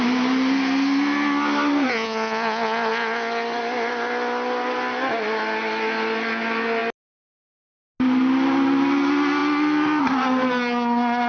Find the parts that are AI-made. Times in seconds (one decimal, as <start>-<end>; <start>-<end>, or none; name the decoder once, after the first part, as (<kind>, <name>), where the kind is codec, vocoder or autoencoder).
none